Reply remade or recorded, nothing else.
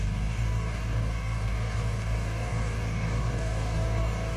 remade